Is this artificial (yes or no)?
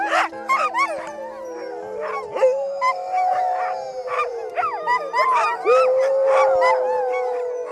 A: no